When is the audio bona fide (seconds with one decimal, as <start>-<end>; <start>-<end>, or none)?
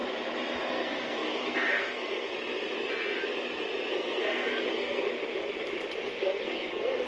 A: 0.0-0.7; 2.3-3.9; 5.1-6.1